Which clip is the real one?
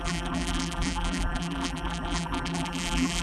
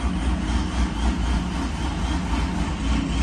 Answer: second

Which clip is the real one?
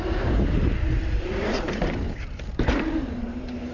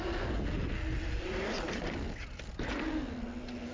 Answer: second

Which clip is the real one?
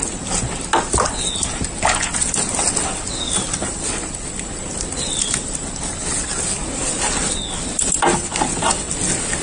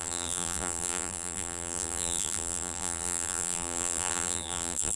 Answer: first